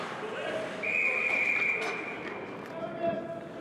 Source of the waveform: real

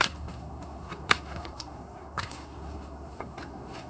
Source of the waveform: fake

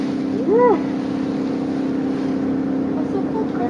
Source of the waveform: real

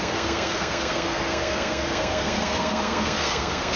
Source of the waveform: fake